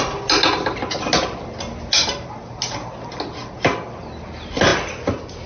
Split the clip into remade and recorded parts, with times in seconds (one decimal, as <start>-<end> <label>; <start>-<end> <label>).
0.0-5.5 recorded